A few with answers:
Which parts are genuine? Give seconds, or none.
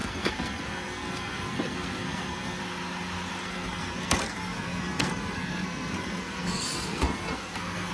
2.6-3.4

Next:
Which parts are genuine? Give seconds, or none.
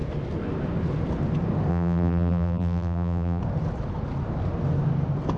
0.0-1.7; 3.4-5.4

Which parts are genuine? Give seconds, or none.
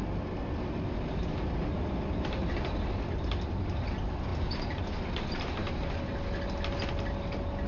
0.0-7.7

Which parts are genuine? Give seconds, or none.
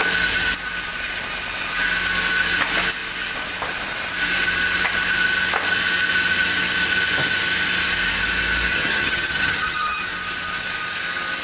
0.0-8.7; 10.0-11.4